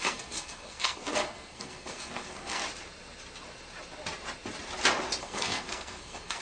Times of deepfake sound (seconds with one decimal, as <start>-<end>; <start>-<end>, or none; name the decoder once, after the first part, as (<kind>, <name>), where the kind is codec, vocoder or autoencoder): 0.0-2.6 (codec, SNAC); 5.2-6.4